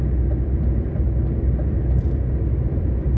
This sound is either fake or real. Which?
fake